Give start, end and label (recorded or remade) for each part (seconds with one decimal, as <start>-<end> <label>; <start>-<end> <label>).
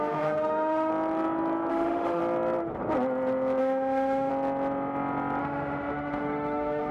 0.0-0.9 remade; 0.9-1.7 recorded; 1.7-2.2 remade; 2.2-3.6 recorded; 3.6-4.3 remade; 4.3-5.4 recorded; 5.4-6.9 remade